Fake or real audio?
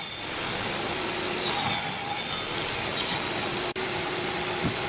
real